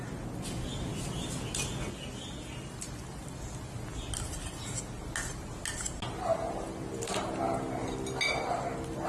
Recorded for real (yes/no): yes